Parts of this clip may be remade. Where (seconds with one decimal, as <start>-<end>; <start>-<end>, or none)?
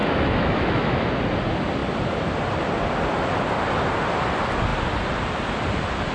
0.0-1.1